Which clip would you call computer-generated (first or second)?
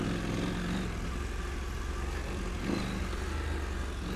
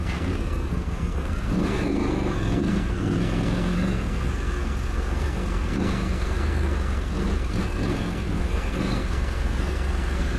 second